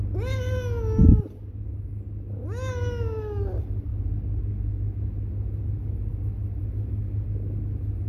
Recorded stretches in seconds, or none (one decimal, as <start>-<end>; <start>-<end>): 0.0-8.1